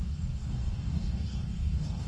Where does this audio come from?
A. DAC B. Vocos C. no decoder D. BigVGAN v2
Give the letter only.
A